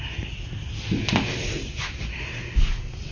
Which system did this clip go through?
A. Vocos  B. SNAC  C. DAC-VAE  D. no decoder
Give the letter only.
D